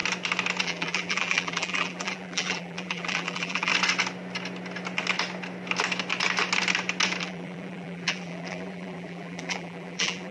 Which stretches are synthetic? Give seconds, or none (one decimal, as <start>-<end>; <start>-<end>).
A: 0.6-3.7; 7.2-10.3